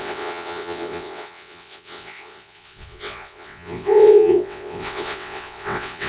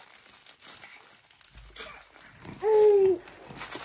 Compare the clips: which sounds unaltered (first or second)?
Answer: second